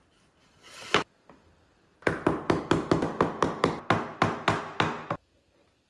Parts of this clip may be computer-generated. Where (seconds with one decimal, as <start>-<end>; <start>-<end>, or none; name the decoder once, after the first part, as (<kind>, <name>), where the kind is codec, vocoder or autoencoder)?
none